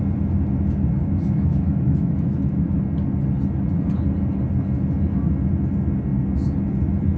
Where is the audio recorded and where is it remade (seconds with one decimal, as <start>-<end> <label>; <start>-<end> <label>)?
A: 0.0-1.0 recorded; 1.0-2.8 remade; 2.8-7.2 recorded